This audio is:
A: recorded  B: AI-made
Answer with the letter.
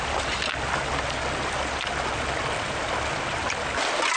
A